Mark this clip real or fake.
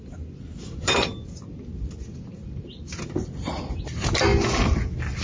real